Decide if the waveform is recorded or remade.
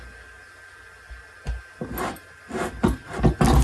recorded